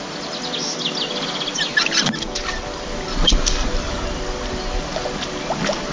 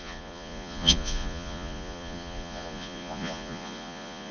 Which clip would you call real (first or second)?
first